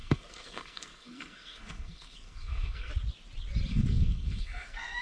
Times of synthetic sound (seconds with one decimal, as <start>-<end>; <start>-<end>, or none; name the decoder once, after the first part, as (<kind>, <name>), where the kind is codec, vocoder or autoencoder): 0.0-2.9 (codec, SNAC); 3.7-5.0